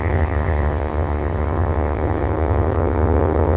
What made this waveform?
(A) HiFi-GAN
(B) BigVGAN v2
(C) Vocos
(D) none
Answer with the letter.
A